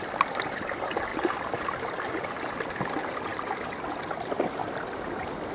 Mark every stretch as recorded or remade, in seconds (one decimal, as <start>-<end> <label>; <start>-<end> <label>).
0.0-1.1 recorded; 1.1-1.9 remade; 1.9-4.6 recorded; 4.6-5.5 remade